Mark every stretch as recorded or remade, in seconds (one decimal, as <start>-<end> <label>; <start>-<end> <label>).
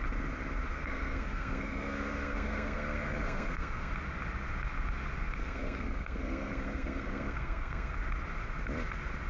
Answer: 0.0-0.7 recorded; 0.7-3.9 remade; 3.9-5.4 recorded; 5.4-7.9 remade; 7.9-9.3 recorded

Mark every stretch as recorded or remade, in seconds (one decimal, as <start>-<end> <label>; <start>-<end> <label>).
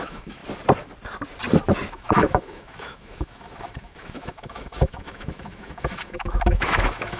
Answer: 0.0-0.4 remade; 0.4-1.9 recorded; 1.9-7.2 remade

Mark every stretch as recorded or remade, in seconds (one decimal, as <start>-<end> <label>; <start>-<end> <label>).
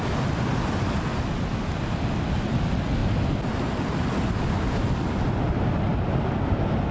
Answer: 0.0-6.9 recorded